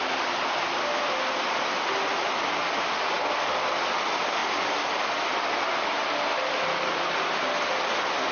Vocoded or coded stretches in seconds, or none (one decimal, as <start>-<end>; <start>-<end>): none